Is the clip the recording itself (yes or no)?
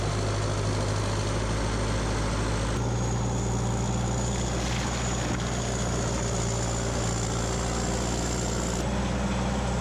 yes